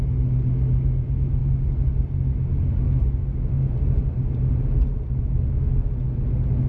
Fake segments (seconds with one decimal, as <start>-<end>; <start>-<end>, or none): none